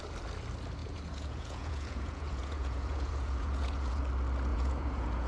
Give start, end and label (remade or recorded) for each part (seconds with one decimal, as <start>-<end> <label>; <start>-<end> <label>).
0.0-0.8 recorded; 0.8-4.0 remade; 4.0-4.5 recorded; 4.5-5.3 remade